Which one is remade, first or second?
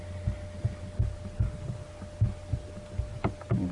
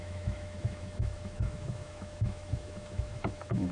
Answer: second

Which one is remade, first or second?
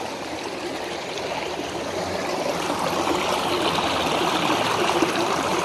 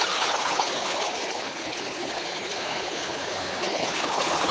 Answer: second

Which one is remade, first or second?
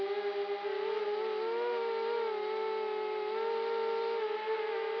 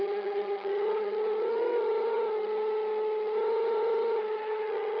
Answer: second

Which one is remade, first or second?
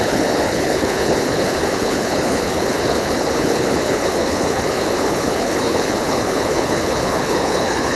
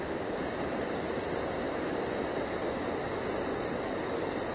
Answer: first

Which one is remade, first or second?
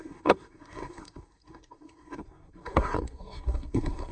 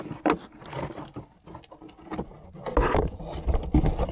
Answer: first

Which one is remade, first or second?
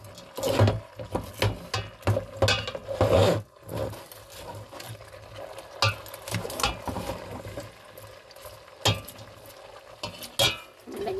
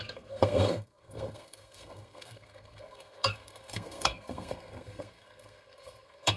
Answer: second